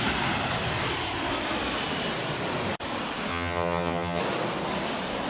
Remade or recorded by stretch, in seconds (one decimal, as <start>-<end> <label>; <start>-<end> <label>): 0.0-3.3 recorded; 3.3-4.2 remade; 4.2-5.3 recorded